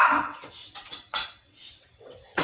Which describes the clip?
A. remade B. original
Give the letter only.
A